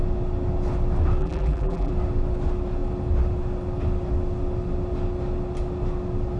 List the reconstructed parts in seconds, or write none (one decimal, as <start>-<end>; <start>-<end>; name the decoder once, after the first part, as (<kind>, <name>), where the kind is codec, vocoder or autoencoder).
1.2-1.9 (vocoder, BigVGAN v2)